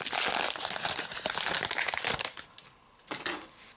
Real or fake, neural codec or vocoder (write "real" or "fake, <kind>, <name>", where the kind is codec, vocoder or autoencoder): real